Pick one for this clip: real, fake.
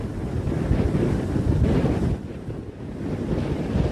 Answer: real